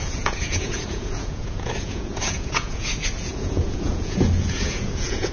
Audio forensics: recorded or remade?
remade